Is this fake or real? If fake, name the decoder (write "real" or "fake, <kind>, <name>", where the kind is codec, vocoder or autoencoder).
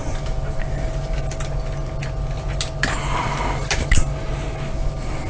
real